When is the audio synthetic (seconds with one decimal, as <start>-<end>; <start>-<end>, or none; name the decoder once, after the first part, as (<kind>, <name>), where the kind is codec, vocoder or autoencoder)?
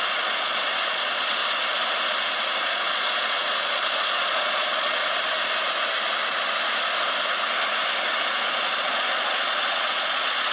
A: 0.0-1.4 (vocoder, Vocos); 2.6-5.0; 8.4-10.5